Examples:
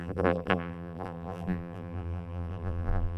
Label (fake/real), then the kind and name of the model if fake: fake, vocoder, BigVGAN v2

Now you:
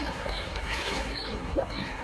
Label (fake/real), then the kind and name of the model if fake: fake, codec, SNAC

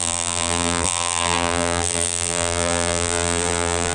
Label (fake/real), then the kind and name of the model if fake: fake, vocoder, BigVGAN v2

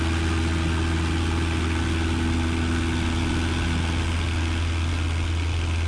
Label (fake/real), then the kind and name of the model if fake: real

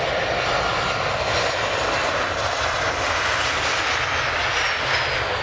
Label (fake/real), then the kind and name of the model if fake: real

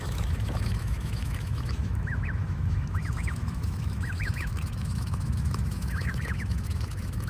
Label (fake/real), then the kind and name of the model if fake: fake, autoencoder, DAC-VAE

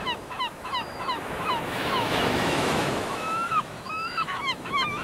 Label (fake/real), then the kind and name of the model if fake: fake, autoencoder, DAC-VAE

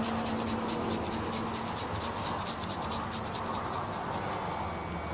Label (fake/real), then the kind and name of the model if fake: real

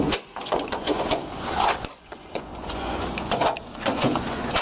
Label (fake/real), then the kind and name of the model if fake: fake, vocoder, Vocos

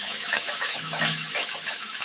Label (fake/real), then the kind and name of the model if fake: fake, autoencoder, DAC-VAE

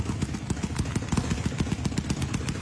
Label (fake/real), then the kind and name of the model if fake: real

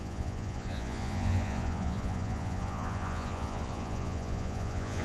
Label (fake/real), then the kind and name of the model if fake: fake, vocoder, Vocos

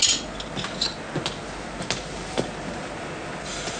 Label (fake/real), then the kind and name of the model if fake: real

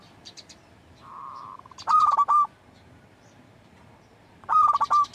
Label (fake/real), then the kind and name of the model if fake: fake, vocoder, BigVGAN v2